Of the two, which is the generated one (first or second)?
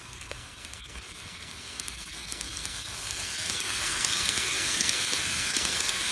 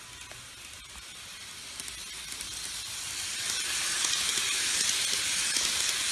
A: first